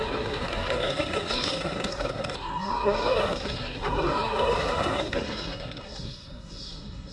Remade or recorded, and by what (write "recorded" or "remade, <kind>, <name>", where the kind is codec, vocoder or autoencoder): remade, codec, SNAC